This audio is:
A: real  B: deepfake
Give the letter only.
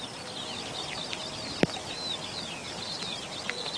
A